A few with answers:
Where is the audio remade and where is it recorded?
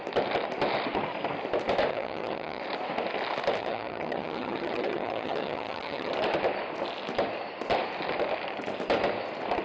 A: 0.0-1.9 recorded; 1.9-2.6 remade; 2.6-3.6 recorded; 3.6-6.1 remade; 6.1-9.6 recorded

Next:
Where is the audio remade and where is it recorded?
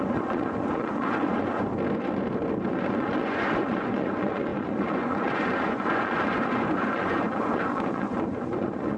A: 0.0-1.7 remade; 1.7-2.7 recorded; 2.7-9.0 remade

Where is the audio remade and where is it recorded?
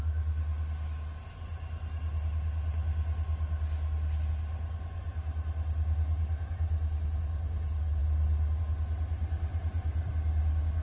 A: 0.0-9.5 recorded; 9.5-10.1 remade; 10.1-10.8 recorded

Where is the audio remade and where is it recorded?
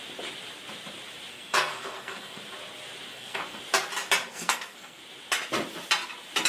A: 0.0-1.3 recorded; 1.3-2.4 remade; 2.4-3.1 recorded; 3.1-3.6 remade; 3.6-4.3 recorded; 4.3-5.0 remade; 5.0-6.5 recorded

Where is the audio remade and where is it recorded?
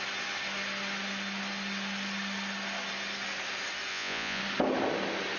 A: 0.0-3.9 recorded; 3.9-4.4 remade; 4.4-5.4 recorded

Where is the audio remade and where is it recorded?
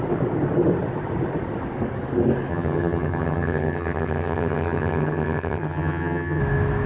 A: 0.0-2.5 recorded; 2.5-6.4 remade; 6.4-6.9 recorded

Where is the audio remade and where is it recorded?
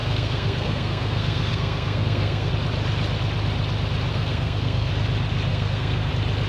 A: 0.0-2.5 remade; 2.5-4.1 recorded; 4.1-4.9 remade; 4.9-5.5 recorded; 5.5-6.1 remade; 6.1-6.5 recorded